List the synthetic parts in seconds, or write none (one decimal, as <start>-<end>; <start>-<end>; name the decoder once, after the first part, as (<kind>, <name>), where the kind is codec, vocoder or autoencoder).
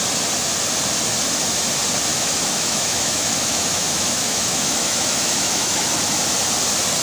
2.1-5.9 (autoencoder, DAC-VAE)